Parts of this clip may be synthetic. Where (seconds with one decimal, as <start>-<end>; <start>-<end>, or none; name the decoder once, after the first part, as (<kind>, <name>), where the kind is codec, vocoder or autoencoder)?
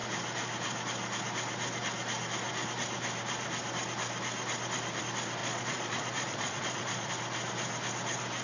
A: 5.4-7.1 (vocoder, Vocos)